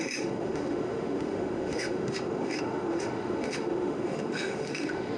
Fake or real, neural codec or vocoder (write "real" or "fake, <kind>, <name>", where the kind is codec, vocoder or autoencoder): fake, autoencoder, DAC-VAE